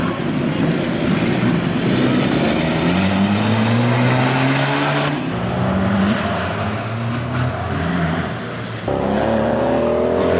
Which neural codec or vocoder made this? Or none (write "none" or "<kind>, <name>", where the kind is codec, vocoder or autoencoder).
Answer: none